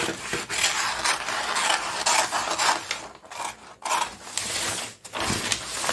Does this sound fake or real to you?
real